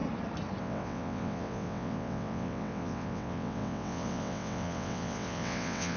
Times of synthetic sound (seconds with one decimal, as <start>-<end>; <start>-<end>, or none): 0.6-6.0